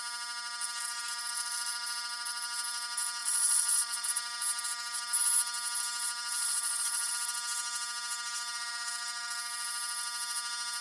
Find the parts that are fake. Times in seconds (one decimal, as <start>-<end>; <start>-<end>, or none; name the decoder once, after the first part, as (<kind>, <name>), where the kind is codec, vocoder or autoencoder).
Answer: 3.2-4.1 (vocoder, Vocos); 6.4-7.1